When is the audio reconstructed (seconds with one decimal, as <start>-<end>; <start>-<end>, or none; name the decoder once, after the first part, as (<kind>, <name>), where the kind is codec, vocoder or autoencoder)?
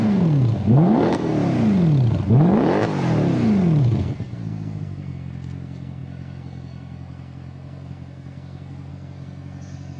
0.0-1.3 (codec, SNAC); 3.8-10.0